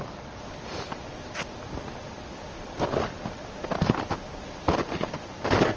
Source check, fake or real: real